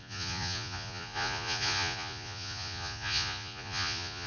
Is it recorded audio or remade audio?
remade